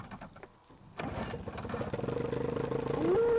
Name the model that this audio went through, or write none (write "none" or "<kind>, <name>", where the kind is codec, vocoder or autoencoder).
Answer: none